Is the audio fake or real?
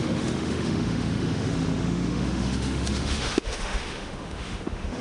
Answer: fake